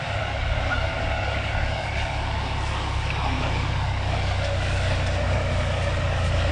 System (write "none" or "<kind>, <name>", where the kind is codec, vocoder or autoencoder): codec, DAC